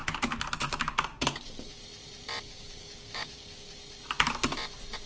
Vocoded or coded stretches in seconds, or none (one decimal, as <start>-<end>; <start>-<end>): 0.7-1.8; 2.4-3.8